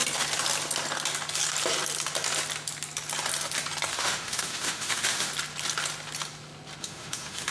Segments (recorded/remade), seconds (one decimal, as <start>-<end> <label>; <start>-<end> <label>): 0.0-3.9 recorded; 3.9-5.3 remade; 5.3-6.8 recorded; 6.8-7.5 remade

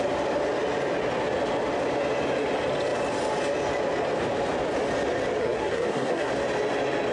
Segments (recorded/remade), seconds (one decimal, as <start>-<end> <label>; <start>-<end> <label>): 0.0-5.4 recorded; 5.4-6.3 remade; 6.3-7.1 recorded

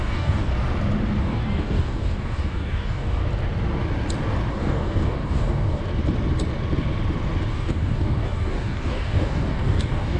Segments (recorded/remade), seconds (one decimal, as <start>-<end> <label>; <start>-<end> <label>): 0.0-0.5 remade; 0.5-1.2 recorded; 1.2-3.2 remade; 3.2-4.5 recorded; 4.5-5.8 remade; 5.8-7.5 recorded; 7.5-10.2 remade

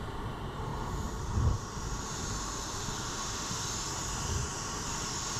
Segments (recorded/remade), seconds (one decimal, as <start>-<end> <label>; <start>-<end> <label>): 0.0-3.1 recorded; 3.1-3.6 remade; 3.6-5.4 recorded

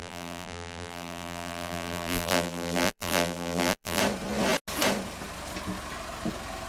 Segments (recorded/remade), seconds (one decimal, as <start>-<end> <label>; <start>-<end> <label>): 0.0-4.0 remade; 4.0-6.7 recorded

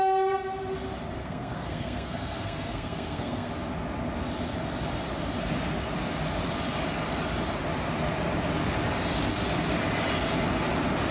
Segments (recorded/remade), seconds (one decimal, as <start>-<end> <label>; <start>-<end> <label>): 0.0-1.2 recorded; 1.2-3.5 remade; 3.5-11.1 recorded